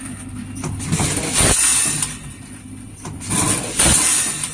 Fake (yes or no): no